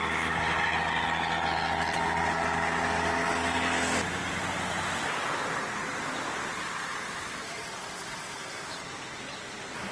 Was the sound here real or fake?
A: real